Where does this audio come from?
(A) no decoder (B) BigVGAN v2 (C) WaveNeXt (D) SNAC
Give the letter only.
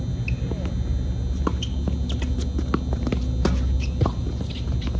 A